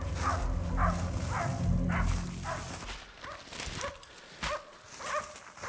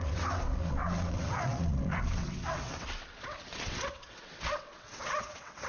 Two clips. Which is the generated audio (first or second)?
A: second